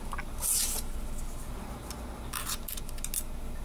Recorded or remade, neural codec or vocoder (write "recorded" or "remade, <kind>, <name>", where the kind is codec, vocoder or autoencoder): recorded